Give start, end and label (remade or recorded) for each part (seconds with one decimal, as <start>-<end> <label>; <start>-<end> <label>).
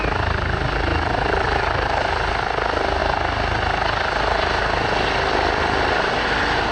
0.0-3.0 remade; 3.0-6.1 recorded; 6.1-6.7 remade